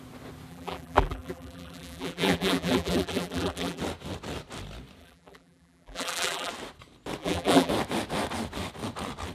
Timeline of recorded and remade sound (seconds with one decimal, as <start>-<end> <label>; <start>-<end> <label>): 0.0-0.5 recorded; 0.5-3.8 remade; 3.8-5.0 recorded; 5.0-6.5 remade; 6.5-7.2 recorded; 7.2-7.7 remade; 7.7-9.3 recorded